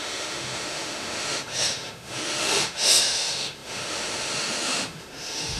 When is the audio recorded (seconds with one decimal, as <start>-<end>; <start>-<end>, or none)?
none